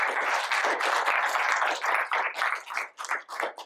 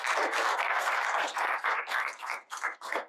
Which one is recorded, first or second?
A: first